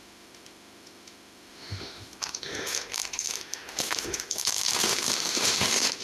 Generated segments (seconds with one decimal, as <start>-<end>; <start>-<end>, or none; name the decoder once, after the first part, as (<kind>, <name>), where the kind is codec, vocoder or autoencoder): 0.0-6.0 (autoencoder, DAC-VAE)